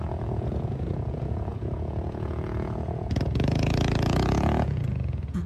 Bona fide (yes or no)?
no